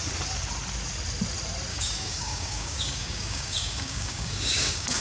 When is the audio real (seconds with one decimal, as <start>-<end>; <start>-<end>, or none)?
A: 0.0-1.7

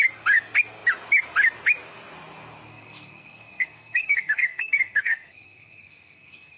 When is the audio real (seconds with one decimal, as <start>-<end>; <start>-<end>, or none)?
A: 0.0-2.7

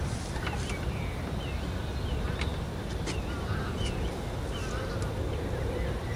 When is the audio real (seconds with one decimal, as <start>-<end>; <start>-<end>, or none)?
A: 0.0-6.2

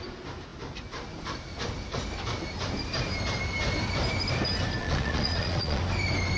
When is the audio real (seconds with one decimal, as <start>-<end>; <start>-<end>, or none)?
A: 0.0-4.8; 5.8-6.4

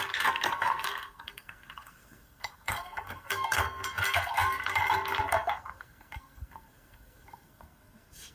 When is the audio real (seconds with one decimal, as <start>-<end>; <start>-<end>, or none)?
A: none

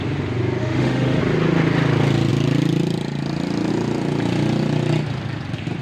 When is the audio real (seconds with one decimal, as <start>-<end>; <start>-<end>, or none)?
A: 0.0-0.6; 1.2-5.8